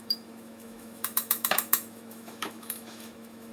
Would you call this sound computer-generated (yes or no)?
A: yes